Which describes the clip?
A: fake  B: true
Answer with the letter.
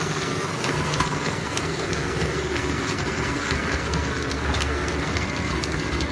A